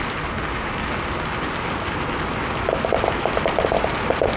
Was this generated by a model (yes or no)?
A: no